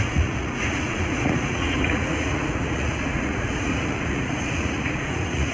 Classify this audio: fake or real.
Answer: fake